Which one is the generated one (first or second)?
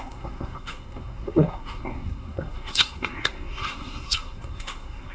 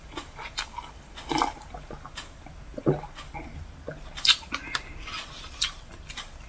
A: first